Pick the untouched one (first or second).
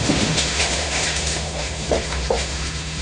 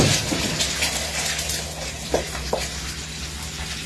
second